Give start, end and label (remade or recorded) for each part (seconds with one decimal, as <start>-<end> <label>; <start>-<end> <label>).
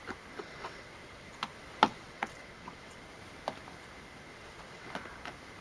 0.0-0.4 recorded; 0.4-1.3 remade; 1.3-1.9 recorded; 1.9-3.0 remade; 3.0-4.3 recorded; 4.3-4.9 remade; 4.9-5.6 recorded